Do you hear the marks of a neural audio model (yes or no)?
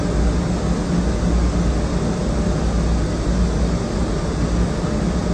no